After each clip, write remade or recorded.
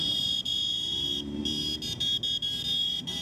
recorded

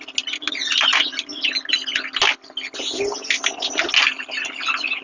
recorded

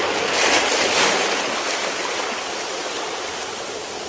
recorded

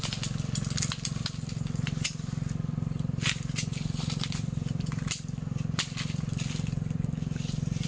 recorded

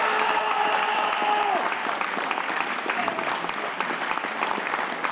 recorded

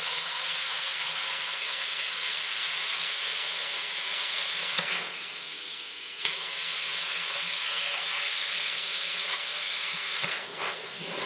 remade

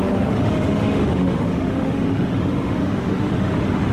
remade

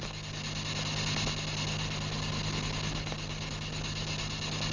recorded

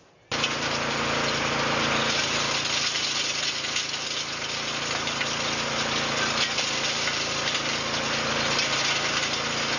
recorded